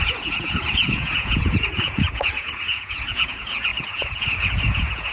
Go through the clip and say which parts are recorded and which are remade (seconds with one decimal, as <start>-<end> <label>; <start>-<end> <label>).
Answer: 0.0-5.1 remade